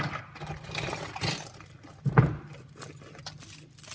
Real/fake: real